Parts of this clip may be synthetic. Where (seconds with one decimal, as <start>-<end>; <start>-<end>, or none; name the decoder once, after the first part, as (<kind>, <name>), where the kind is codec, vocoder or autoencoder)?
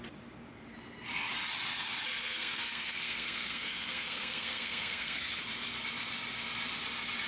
2.2-5.3 (codec, SNAC)